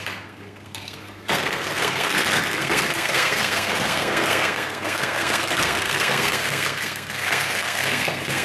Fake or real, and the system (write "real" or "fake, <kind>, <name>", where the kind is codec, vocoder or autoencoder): fake, codec, SNAC